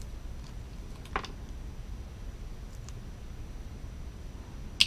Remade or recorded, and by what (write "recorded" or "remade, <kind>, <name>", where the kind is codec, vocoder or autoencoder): recorded